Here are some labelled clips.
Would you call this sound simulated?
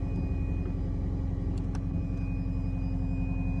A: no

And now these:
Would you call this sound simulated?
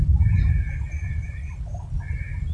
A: yes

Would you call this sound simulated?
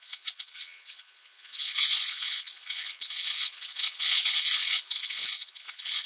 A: yes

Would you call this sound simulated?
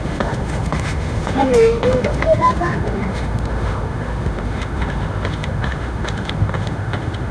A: yes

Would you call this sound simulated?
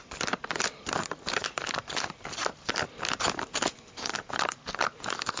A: no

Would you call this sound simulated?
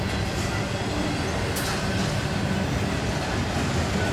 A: no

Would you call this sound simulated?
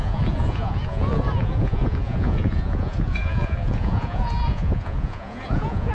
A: yes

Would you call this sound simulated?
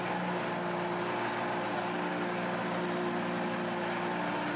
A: no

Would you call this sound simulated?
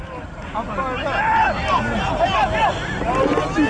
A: no